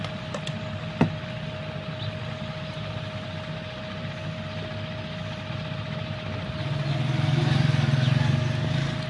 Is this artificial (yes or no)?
no